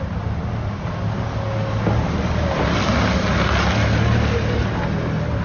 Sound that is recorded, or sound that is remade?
recorded